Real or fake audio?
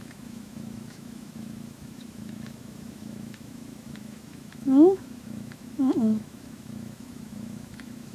fake